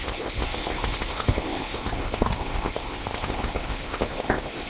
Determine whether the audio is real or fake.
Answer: fake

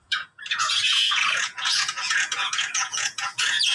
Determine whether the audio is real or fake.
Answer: fake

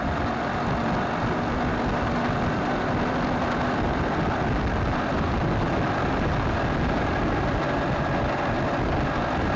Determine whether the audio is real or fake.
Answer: real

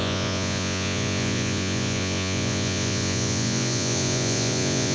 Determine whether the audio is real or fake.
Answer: fake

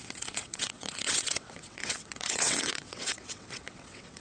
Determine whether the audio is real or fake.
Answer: fake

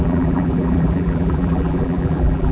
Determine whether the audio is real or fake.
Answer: fake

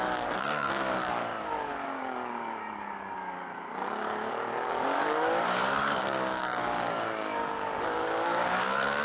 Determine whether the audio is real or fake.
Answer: fake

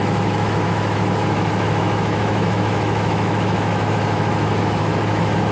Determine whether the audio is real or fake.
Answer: fake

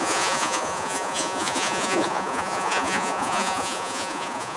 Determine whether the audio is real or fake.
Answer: fake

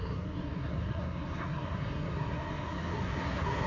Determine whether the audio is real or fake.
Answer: fake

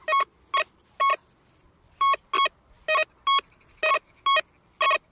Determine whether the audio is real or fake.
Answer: real